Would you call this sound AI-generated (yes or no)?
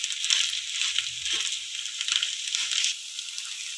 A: no